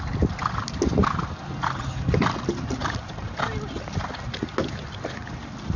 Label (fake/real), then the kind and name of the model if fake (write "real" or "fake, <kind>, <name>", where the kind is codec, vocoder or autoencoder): real